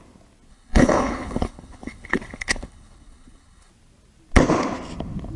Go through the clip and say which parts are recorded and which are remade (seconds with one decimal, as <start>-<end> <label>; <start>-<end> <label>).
0.0-0.5 recorded; 0.5-3.7 remade; 3.7-5.4 recorded